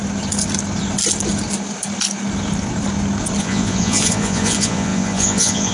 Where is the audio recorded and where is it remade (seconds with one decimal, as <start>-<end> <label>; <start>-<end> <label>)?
0.0-3.4 recorded; 3.4-5.7 remade